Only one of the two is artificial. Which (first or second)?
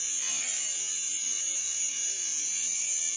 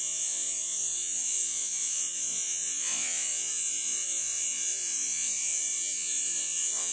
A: second